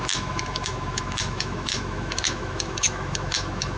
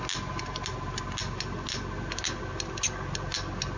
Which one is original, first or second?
second